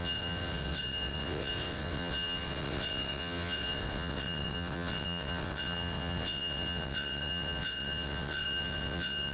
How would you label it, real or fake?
fake